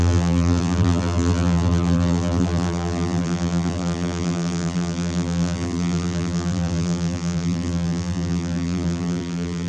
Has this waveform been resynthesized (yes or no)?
yes